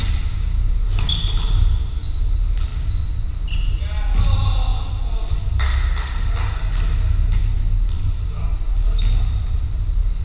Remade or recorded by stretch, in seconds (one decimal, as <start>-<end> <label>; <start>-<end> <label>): 0.0-10.2 recorded